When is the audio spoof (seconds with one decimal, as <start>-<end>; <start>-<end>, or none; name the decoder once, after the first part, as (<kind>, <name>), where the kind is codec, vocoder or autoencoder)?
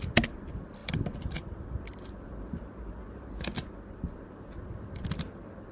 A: none